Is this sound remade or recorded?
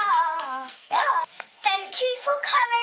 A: remade